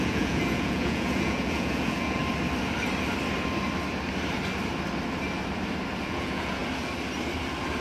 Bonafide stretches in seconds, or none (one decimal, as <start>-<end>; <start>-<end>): 2.2-6.0; 6.6-7.8